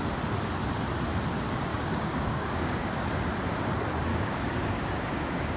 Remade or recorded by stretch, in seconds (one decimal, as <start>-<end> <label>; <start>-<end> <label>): 0.0-1.7 recorded; 1.7-2.9 remade; 2.9-4.1 recorded; 4.1-5.6 remade